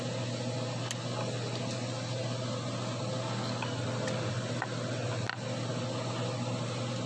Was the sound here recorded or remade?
recorded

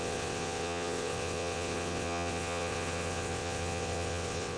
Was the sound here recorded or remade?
remade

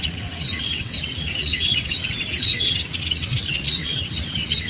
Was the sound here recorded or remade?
remade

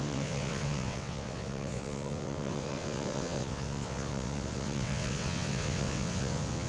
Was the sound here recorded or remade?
remade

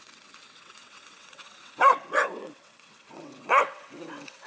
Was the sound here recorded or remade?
remade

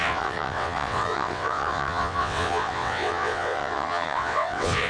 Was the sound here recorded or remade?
remade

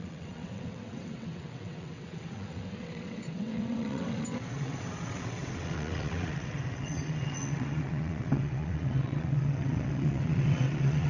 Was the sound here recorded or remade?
remade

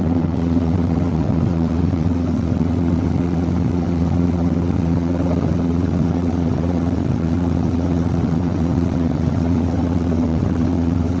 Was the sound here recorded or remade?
remade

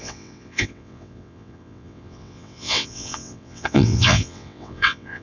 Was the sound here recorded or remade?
remade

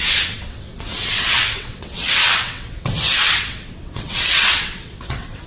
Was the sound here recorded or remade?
remade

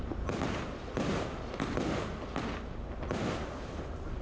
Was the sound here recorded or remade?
recorded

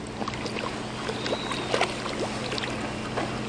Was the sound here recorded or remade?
recorded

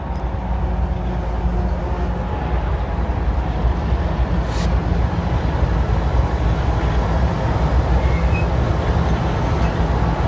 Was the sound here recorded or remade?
recorded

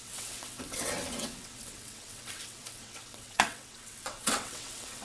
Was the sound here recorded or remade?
remade